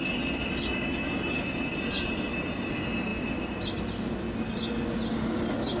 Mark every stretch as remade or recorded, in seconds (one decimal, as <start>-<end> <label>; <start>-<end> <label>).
0.0-5.8 recorded